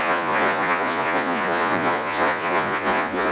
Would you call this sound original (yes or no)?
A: no